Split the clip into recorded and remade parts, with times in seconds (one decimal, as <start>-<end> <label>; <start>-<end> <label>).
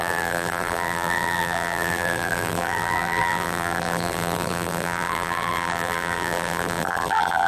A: 0.0-7.5 remade